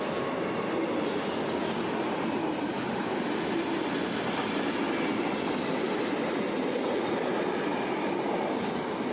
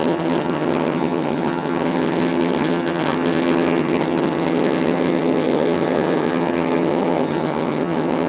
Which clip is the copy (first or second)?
second